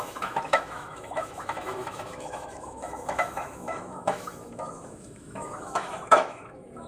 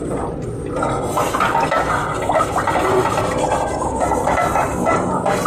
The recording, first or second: second